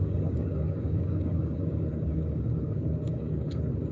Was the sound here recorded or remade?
remade